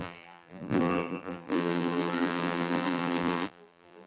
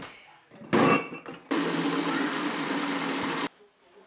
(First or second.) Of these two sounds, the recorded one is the second